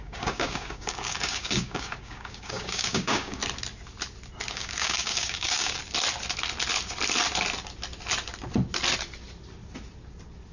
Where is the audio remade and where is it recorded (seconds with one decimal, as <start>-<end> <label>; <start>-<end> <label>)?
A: 0.0-3.4 remade; 3.4-4.5 recorded; 4.5-5.8 remade; 5.8-10.5 recorded